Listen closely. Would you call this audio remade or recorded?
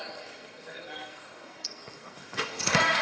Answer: remade